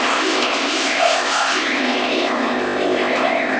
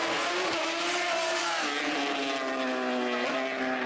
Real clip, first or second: second